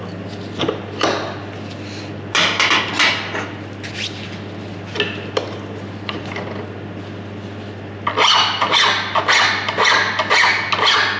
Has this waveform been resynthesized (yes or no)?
no